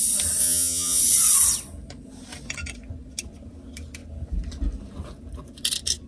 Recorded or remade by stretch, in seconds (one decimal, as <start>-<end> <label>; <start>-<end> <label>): 0.0-0.4 recorded; 0.4-1.0 remade; 1.0-6.1 recorded